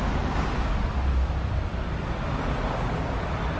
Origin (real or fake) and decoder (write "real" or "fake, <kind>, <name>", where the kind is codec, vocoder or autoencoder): real